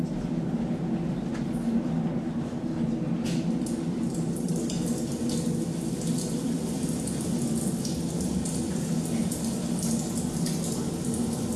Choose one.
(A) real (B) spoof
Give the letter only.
A